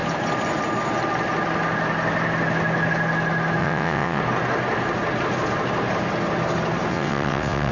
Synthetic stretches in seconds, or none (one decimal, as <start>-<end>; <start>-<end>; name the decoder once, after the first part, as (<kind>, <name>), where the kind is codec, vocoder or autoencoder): 3.6-4.2 (vocoder, WaveNeXt); 6.9-7.7